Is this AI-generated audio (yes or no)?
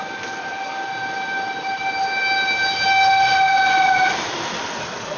no